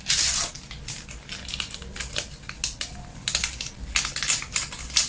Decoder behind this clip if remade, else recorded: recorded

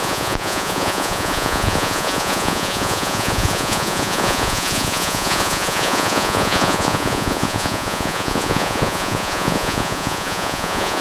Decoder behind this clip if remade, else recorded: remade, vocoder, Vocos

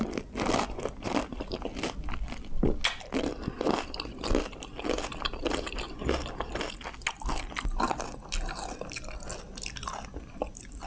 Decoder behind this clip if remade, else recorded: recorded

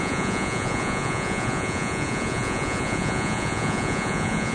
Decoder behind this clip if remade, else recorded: remade, vocoder, Vocos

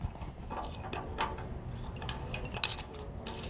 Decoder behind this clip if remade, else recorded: recorded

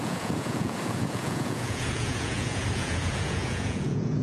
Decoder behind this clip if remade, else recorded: remade, vocoder, Vocos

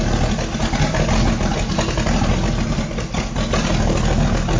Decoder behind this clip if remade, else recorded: recorded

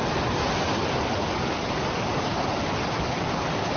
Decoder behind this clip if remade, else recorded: recorded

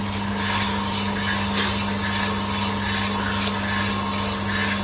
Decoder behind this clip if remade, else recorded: recorded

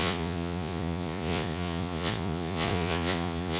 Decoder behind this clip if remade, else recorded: remade, vocoder, Vocos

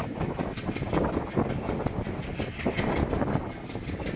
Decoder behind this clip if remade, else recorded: recorded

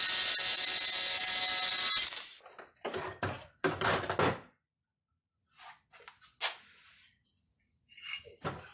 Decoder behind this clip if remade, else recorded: recorded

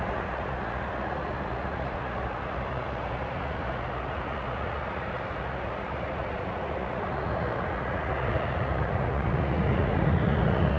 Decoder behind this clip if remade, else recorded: remade, vocoder, Vocos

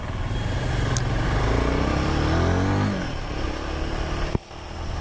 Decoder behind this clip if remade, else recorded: recorded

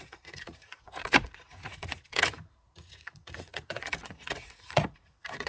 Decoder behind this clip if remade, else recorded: remade, vocoder, Vocos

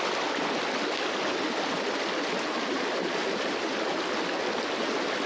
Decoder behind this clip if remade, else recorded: recorded